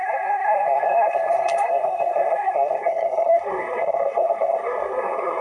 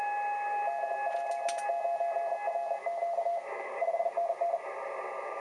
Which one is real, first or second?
second